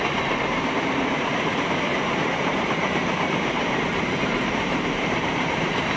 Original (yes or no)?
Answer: no